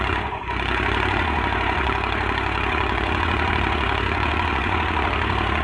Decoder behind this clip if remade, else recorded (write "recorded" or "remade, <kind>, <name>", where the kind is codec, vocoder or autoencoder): remade, vocoder, Vocos